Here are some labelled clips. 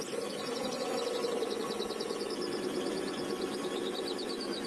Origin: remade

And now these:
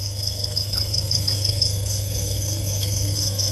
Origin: remade